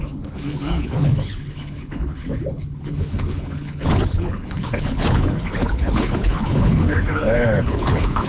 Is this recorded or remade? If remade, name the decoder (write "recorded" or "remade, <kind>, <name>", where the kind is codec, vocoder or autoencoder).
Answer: remade, codec, HILCodec